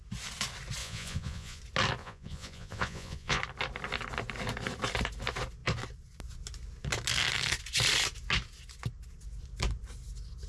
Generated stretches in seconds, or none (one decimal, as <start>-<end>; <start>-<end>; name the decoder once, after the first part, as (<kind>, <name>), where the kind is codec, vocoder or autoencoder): 0.8-1.6 (vocoder, Vocos); 2.0-3.4